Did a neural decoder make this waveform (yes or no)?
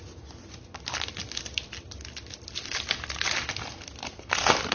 no